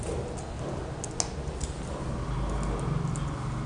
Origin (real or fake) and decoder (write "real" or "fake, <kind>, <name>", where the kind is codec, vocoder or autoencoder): real